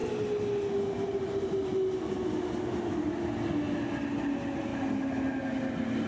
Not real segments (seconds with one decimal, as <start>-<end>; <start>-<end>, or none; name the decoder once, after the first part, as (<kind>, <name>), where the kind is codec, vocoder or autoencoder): none